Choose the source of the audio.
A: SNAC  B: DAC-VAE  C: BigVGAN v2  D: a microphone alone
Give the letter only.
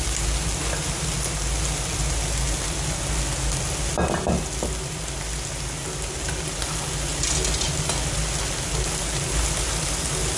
D